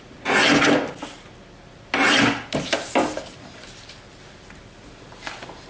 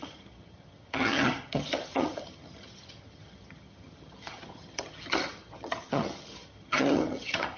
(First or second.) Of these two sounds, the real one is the first